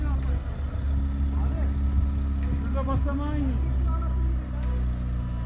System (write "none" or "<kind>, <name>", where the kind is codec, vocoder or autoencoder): none